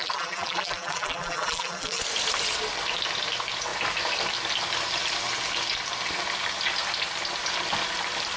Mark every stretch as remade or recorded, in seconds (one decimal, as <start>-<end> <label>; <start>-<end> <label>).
0.0-2.0 remade; 2.0-8.4 recorded